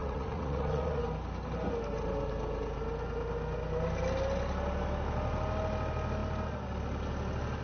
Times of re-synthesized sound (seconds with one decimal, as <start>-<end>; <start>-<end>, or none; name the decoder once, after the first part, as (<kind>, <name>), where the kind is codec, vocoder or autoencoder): 0.0-1.0 (vocoder, Vocos)